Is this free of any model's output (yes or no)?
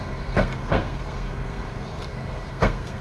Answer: no